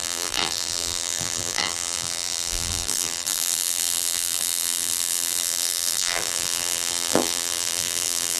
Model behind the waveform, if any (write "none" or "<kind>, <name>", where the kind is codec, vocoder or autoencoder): vocoder, BigVGAN v2